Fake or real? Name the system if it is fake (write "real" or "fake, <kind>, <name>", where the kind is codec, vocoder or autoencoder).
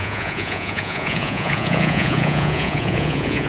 fake, vocoder, Vocos